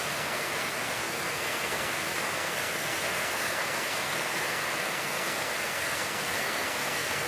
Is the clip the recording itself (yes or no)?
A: no